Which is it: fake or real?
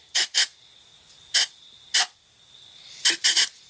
real